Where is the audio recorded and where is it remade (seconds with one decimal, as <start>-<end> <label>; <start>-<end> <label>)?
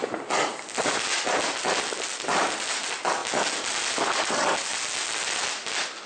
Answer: 0.0-6.1 recorded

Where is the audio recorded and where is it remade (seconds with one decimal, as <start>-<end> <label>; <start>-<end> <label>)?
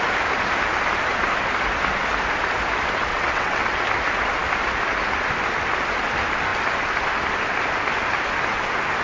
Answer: 0.0-3.1 recorded; 3.1-3.7 remade; 3.7-9.0 recorded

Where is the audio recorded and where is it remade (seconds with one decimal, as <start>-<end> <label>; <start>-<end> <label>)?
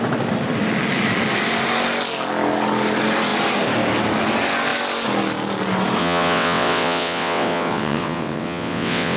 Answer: 0.0-6.0 recorded; 6.0-9.2 remade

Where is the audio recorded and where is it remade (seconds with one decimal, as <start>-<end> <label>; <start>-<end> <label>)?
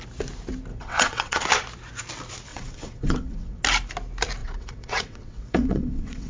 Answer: 0.0-0.7 recorded; 0.7-1.4 remade; 1.4-2.5 recorded; 2.5-3.6 remade; 3.6-4.4 recorded; 4.4-6.3 remade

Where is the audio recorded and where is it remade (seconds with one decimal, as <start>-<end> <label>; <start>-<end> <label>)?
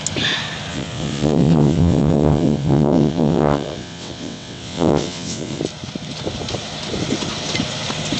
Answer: 0.0-0.7 recorded; 0.7-5.6 remade; 5.6-8.2 recorded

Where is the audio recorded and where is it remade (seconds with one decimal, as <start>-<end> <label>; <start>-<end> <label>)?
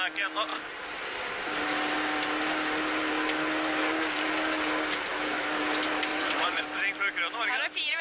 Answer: 0.0-6.1 recorded; 6.1-6.6 remade; 6.6-8.0 recorded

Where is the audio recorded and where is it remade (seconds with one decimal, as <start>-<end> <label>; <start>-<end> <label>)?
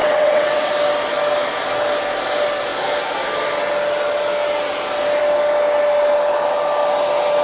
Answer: 0.0-0.7 remade; 0.7-7.4 recorded